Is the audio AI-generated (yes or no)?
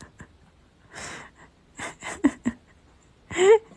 no